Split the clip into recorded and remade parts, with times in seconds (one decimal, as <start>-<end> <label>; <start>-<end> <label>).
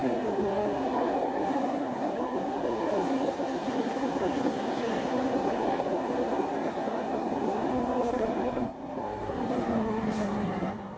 0.0-11.0 remade